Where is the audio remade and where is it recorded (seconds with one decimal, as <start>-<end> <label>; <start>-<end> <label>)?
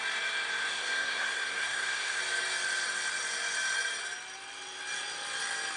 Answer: 0.0-0.7 recorded; 0.7-2.2 remade; 2.2-5.8 recorded